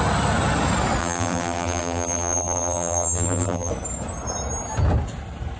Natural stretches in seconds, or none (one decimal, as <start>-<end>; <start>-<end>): 0.0-1.0; 3.7-5.6